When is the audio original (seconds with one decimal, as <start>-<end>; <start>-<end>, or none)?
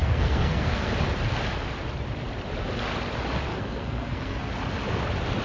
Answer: 0.9-3.5; 4.5-5.4